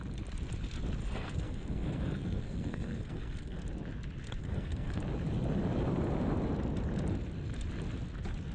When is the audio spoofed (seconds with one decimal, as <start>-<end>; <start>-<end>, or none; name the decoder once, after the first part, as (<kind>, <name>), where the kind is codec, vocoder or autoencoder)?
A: 1.0-3.6 (codec, SNAC); 4.4-5.0